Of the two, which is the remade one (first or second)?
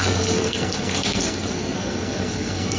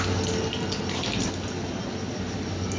first